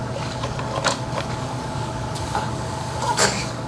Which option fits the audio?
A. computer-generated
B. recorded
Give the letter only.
A